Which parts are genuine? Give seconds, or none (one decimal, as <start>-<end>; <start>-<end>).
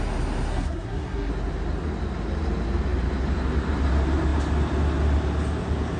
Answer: 0.0-0.5; 1.3-6.0